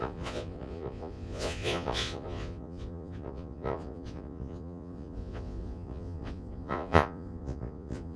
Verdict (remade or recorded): remade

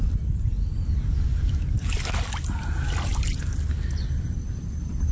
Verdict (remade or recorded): recorded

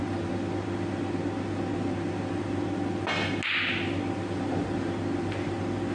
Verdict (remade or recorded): recorded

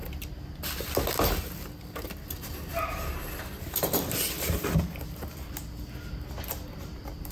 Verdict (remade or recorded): remade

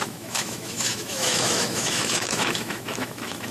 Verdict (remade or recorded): remade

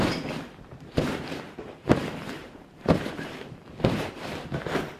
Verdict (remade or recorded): remade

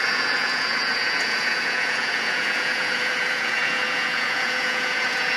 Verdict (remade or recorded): remade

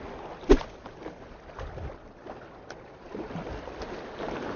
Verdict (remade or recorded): recorded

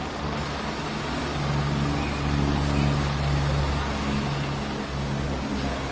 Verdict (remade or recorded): recorded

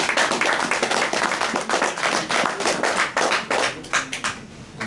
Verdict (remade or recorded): recorded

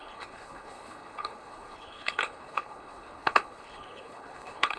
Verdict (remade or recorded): remade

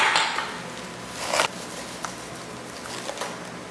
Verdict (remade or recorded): recorded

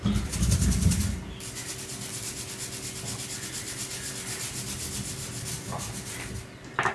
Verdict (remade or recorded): recorded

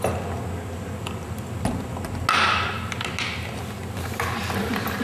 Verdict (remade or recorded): recorded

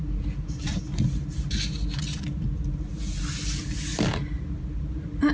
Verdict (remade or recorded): recorded